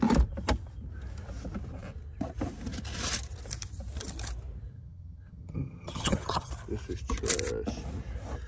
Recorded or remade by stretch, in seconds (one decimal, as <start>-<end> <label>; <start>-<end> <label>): 0.0-4.7 recorded; 4.7-6.5 remade; 6.5-8.5 recorded